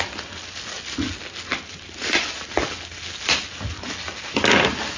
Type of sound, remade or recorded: recorded